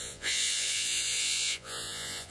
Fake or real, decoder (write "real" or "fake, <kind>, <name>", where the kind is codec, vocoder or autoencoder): fake, vocoder, Vocos